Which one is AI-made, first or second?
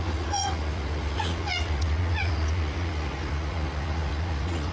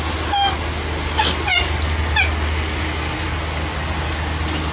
first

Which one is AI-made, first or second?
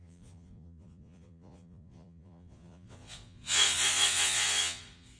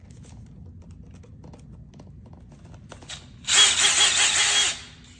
first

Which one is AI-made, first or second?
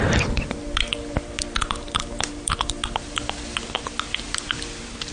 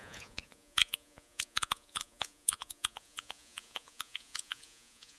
second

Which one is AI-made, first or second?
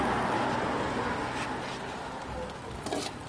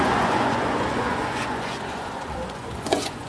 second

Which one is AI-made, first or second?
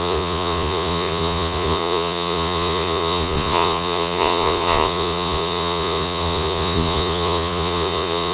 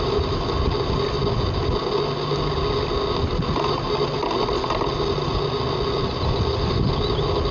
first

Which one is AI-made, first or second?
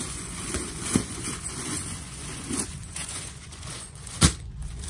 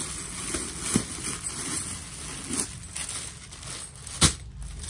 first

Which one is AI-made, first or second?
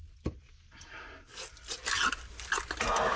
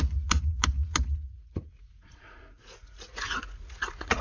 second